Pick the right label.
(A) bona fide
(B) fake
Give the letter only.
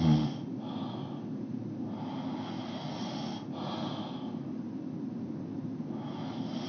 A